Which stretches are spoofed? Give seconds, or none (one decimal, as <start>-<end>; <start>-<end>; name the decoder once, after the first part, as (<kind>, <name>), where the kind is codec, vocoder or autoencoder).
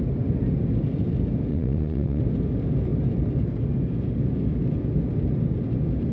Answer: 1.5-2.2 (vocoder, Vocos)